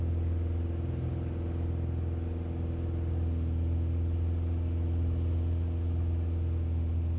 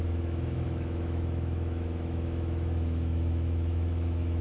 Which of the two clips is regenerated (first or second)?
second